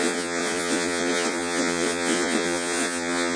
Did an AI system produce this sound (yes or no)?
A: yes